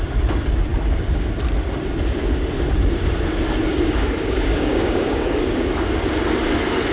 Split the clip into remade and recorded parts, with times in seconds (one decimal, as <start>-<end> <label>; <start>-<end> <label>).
0.0-3.7 recorded; 3.7-5.9 remade; 5.9-6.9 recorded